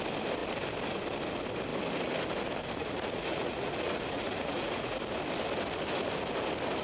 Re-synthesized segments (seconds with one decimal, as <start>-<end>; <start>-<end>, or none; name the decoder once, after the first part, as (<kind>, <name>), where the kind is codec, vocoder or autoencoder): 2.8-5.0 (vocoder, Vocos)